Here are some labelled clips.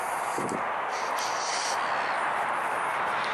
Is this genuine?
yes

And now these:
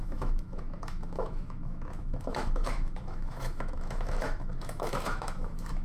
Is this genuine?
no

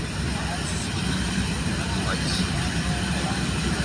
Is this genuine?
yes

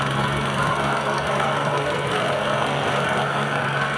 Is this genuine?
no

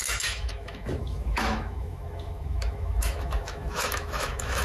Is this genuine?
no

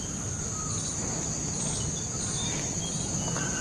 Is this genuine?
yes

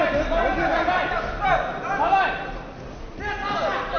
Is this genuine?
yes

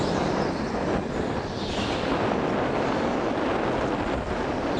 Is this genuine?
yes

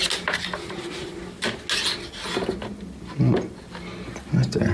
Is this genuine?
yes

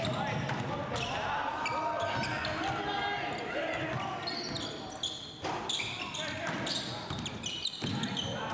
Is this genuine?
yes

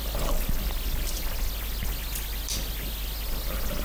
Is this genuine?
yes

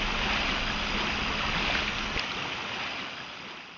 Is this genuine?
yes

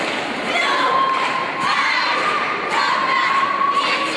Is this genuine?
no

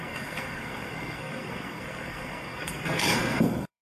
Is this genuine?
no